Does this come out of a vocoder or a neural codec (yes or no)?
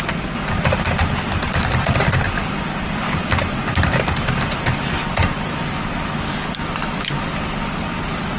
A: no